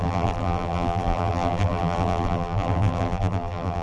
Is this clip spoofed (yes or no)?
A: yes